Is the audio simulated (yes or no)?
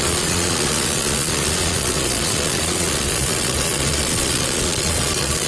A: yes